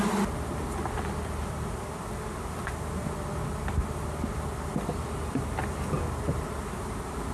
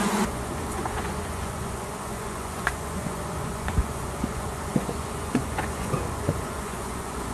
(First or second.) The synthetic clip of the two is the second